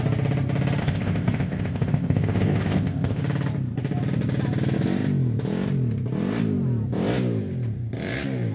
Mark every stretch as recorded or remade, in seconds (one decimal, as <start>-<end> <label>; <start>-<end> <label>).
0.0-0.8 recorded; 0.8-3.2 remade; 3.2-8.5 recorded